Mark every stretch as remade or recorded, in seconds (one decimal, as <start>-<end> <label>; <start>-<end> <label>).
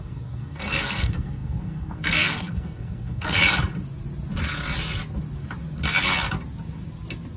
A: 0.0-3.4 remade; 3.4-7.4 recorded